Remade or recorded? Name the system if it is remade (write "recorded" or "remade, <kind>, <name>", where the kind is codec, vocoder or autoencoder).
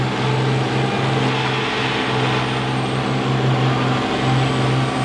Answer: recorded